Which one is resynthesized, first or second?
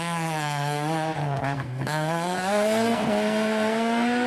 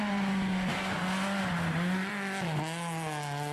first